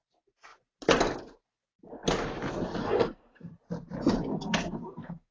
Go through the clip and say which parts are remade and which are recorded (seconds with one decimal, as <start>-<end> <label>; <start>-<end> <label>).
0.0-2.8 recorded; 2.8-3.5 remade; 3.5-4.3 recorded; 4.3-5.3 remade